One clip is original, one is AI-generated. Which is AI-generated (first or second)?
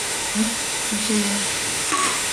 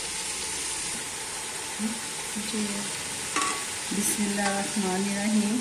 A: first